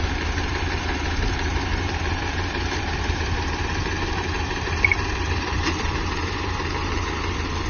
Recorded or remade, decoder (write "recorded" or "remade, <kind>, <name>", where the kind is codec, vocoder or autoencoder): remade, vocoder, BigVGAN v2